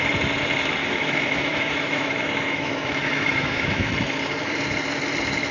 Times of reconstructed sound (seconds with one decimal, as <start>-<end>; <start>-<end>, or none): 0.8-3.9